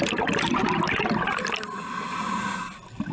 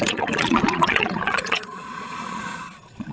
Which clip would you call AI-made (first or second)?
second